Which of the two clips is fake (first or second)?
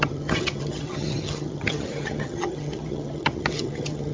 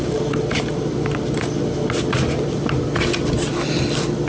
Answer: first